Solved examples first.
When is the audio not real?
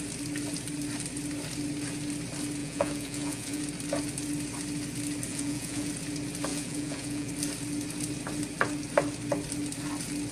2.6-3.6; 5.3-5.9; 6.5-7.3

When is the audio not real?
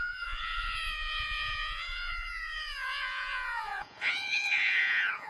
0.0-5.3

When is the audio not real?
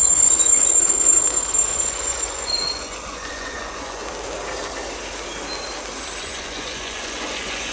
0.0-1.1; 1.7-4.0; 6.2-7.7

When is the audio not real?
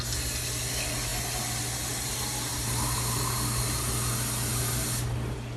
none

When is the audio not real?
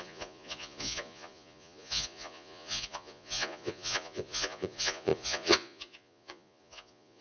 0.0-7.2